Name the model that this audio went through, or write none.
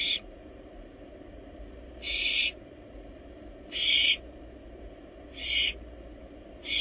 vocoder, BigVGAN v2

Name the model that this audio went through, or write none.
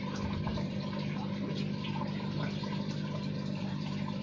vocoder, BigVGAN v2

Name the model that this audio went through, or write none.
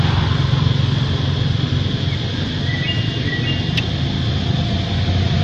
none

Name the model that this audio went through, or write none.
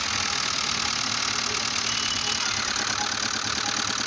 none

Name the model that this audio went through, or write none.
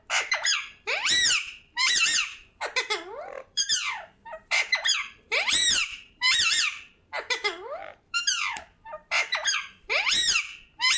vocoder, BigVGAN v2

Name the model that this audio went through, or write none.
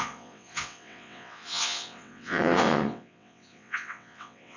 vocoder, WaveNeXt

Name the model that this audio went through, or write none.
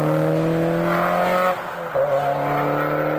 none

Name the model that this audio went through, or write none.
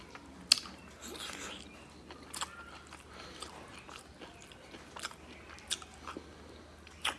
none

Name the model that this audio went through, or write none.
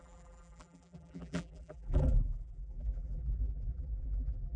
vocoder, BigVGAN v2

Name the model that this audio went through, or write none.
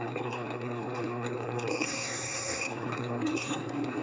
codec, SNAC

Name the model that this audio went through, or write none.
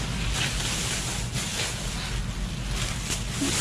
none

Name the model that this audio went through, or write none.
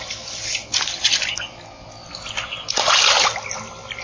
none